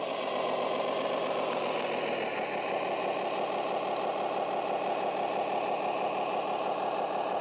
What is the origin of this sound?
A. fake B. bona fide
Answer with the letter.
B